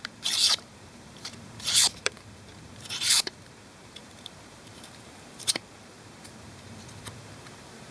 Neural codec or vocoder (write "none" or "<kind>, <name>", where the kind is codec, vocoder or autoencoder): vocoder, BigVGAN v2